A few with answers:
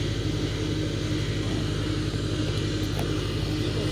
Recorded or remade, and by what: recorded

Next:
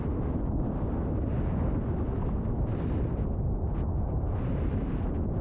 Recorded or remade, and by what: recorded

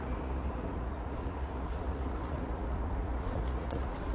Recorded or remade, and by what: remade, vocoder, Vocos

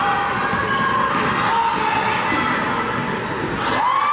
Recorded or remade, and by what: recorded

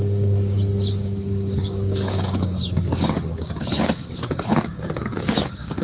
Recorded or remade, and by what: remade, codec, DAC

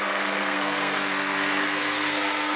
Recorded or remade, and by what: remade, codec, SNAC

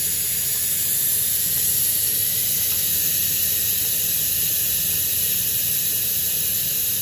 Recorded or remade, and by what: recorded